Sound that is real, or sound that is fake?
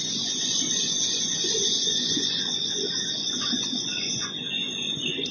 fake